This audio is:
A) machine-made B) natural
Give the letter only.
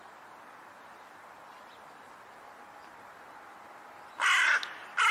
B